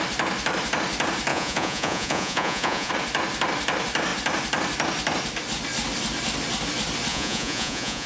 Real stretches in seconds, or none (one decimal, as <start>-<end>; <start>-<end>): 0.0-1.3; 2.9-7.1